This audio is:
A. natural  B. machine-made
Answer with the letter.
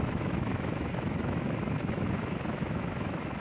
B